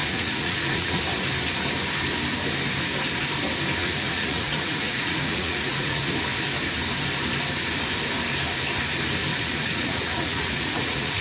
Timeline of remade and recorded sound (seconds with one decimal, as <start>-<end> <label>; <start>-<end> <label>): 0.0-1.0 remade; 1.0-3.8 recorded; 3.8-6.1 remade; 6.1-9.3 recorded; 9.3-11.2 remade